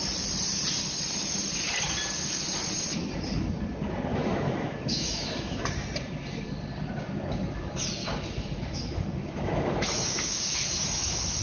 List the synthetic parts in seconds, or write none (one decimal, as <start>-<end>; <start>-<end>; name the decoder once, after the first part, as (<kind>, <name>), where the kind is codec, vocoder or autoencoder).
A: 4.1-5.6 (autoencoder, DAC-VAE); 8.0-11.4